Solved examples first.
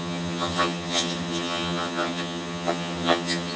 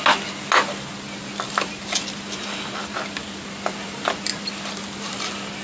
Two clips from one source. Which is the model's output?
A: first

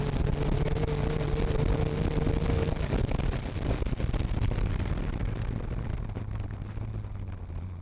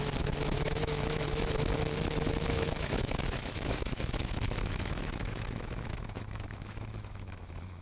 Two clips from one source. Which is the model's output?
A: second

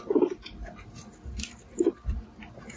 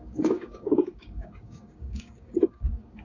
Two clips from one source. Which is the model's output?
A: second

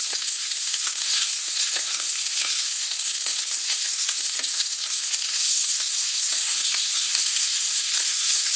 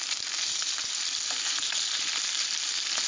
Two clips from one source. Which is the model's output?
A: first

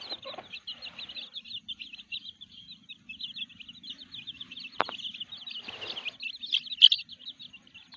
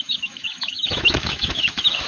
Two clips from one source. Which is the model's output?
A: second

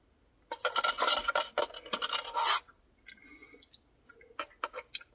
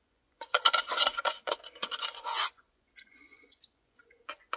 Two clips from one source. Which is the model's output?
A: second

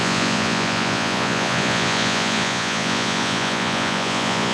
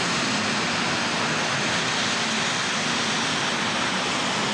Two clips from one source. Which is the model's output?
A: first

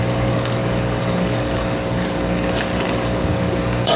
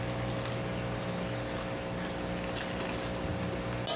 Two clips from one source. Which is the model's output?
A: first